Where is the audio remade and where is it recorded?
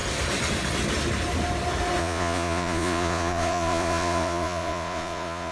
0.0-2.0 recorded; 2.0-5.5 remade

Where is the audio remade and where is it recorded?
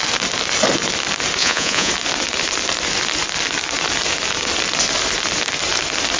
0.0-1.4 recorded; 1.4-1.9 remade; 1.9-6.2 recorded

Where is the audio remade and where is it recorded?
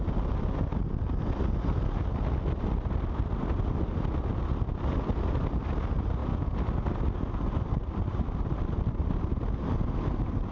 0.0-10.5 recorded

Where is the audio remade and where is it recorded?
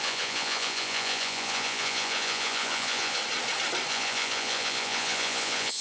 0.0-3.2 remade; 3.2-3.9 recorded; 3.9-5.8 remade